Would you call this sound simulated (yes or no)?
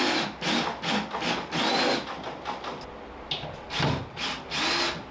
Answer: no